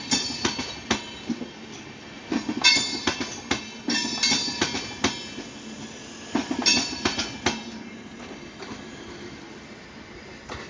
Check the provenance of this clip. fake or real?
real